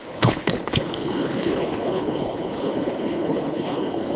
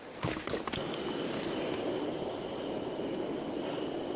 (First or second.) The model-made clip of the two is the first